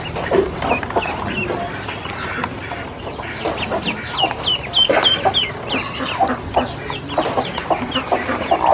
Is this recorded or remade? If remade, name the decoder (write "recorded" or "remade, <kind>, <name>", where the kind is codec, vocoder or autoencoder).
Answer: recorded